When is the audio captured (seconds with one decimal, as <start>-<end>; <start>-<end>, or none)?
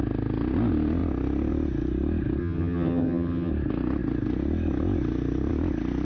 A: 0.0-2.4; 3.5-6.0